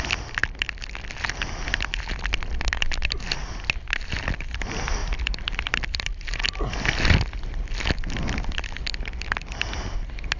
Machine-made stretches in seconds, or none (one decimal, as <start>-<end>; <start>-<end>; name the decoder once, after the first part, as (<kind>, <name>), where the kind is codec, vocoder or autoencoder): 5.0-6.6 (vocoder, BigVGAN v2)